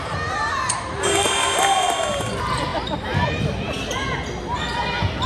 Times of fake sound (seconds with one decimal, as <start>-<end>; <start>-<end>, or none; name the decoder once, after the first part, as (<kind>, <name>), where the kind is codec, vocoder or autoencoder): none